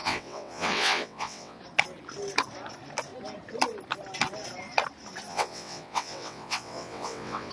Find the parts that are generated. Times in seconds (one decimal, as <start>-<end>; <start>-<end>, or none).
0.0-1.6; 5.3-7.5